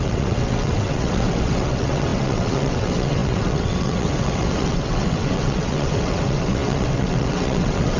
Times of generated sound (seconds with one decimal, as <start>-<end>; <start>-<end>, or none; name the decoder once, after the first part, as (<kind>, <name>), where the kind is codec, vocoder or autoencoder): 0.0-8.0 (vocoder, WaveNeXt)